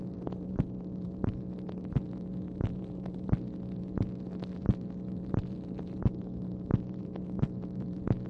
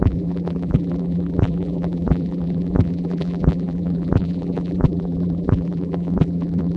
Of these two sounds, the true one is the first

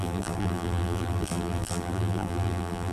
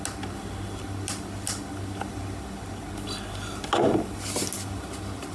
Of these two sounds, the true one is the second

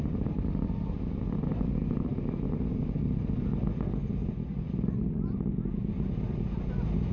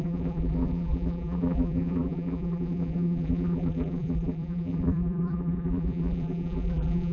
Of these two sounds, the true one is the first